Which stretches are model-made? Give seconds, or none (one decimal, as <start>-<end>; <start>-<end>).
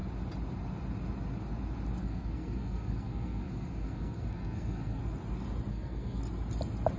2.0-5.0; 5.7-6.2